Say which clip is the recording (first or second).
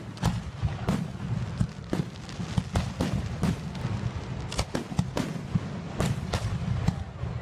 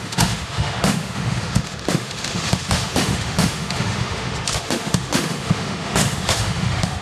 first